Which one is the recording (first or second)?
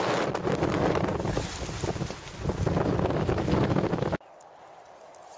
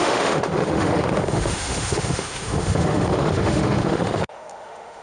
first